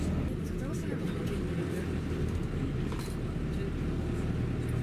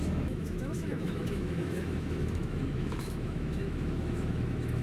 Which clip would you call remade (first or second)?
second